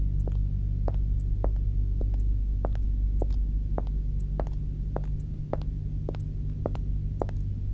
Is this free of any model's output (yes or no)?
yes